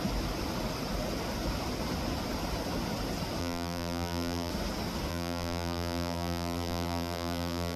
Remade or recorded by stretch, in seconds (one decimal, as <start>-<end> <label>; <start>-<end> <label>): 0.0-3.4 recorded; 3.4-4.5 remade; 4.5-5.1 recorded; 5.1-7.8 remade